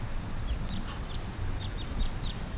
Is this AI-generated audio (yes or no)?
no